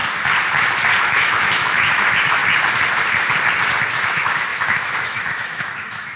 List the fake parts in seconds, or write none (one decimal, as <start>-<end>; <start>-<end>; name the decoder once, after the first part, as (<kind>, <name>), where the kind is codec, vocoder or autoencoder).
1.0-2.4 (autoencoder, DAC-VAE); 3.9-6.2